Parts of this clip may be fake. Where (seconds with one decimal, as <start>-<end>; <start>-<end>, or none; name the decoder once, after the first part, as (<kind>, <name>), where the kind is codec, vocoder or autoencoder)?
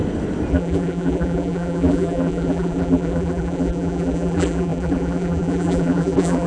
0.5-6.5 (vocoder, BigVGAN v2)